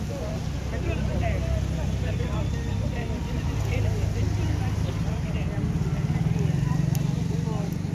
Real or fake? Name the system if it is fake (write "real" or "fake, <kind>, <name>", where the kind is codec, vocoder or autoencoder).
real